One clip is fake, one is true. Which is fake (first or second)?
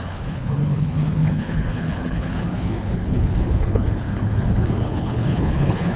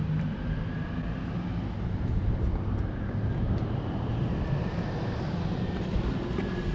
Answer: first